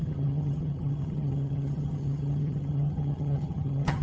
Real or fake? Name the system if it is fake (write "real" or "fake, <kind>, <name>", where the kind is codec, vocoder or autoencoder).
fake, vocoder, HiFi-GAN